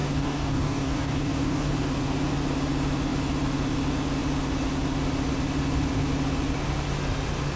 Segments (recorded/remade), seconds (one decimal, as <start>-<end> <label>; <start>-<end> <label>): 0.0-1.7 remade; 1.7-7.6 recorded